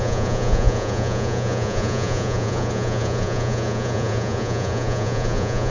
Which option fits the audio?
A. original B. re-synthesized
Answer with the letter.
B